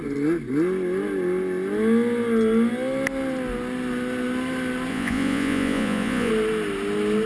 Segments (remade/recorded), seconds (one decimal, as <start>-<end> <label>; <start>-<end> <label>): 0.0-4.9 recorded; 4.9-6.3 remade; 6.3-7.3 recorded